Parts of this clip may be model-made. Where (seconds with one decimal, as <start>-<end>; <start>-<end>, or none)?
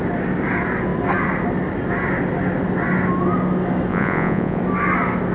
3.9-4.6